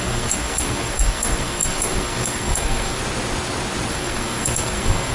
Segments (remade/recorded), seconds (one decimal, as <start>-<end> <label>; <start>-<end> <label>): 0.0-3.0 remade; 3.0-3.9 recorded; 3.9-5.1 remade